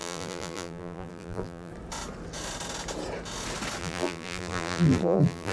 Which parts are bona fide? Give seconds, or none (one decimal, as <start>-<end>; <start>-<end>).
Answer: 1.7-3.8